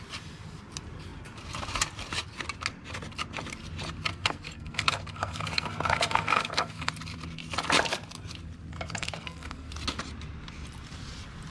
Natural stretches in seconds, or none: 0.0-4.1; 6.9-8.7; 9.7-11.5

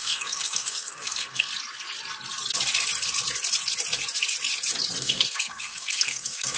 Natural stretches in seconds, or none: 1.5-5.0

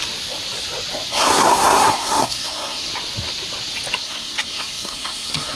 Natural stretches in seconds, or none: 0.0-1.1; 2.9-4.0

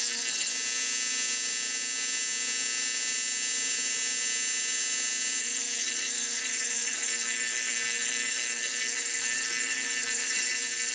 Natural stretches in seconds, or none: 0.5-5.4

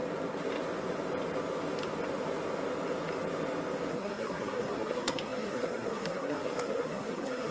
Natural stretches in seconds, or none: 0.0-3.9